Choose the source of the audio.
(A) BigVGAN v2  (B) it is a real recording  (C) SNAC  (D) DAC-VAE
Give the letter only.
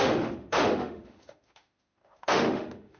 D